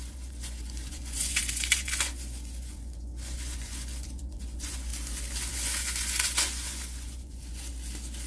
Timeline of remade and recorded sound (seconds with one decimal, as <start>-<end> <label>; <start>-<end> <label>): 0.0-4.9 remade; 4.9-5.5 recorded; 5.5-7.7 remade; 7.7-8.3 recorded